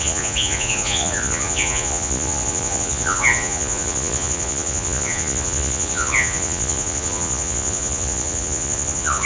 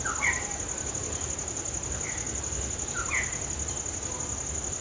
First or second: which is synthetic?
first